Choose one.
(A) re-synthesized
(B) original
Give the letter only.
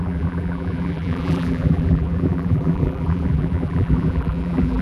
A